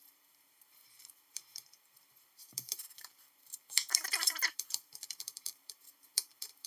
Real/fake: fake